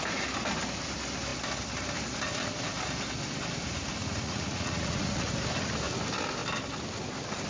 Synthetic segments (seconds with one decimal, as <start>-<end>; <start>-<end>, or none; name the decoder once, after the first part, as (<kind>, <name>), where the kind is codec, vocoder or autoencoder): 4.0-5.3 (vocoder, Vocos)